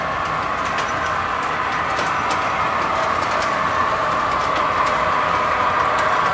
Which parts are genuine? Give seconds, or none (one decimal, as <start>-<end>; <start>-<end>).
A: 0.0-3.8